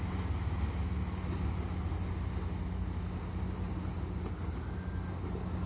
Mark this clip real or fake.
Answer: real